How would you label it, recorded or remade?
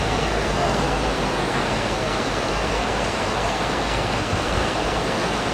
remade